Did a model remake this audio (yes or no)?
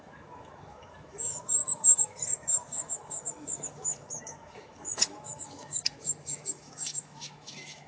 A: yes